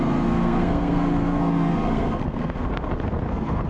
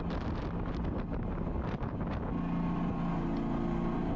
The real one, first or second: second